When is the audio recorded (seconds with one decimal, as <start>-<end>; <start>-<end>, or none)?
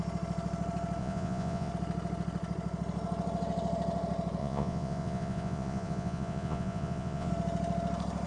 0.0-1.0; 1.7-4.4; 7.3-8.3